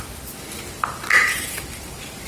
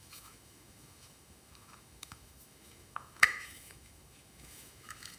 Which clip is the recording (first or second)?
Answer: first